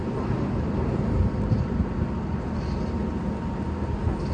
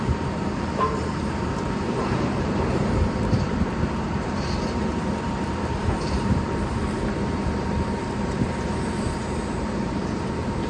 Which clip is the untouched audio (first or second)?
first